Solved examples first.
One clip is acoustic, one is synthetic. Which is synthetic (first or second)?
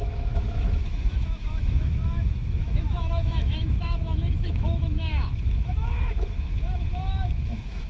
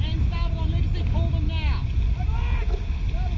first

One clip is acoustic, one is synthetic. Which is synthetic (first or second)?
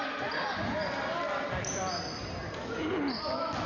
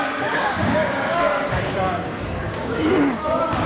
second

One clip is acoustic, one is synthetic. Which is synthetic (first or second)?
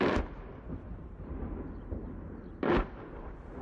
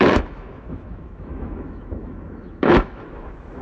second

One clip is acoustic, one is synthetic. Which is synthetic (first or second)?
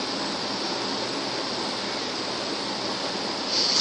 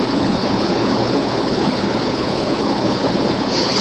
second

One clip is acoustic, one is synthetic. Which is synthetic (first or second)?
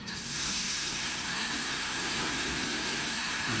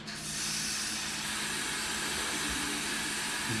first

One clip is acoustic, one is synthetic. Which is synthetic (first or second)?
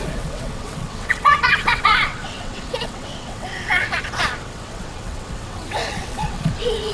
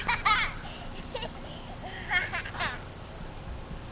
first